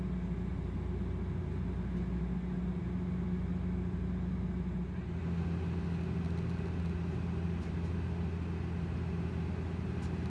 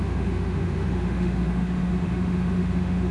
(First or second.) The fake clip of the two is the second